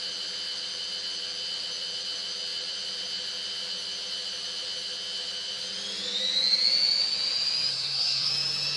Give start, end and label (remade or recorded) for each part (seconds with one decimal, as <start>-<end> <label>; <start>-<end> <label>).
0.0-7.7 recorded; 7.7-8.3 remade; 8.3-8.8 recorded